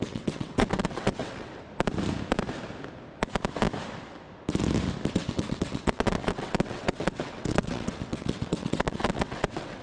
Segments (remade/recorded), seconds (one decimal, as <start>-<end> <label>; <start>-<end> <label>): 0.0-1.5 remade; 1.5-5.1 recorded; 5.1-9.8 remade